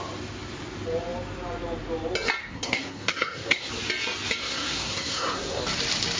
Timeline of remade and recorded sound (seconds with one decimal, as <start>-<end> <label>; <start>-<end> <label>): 0.0-2.4 recorded; 2.4-3.7 remade; 3.7-4.4 recorded; 4.4-5.6 remade; 5.6-6.2 recorded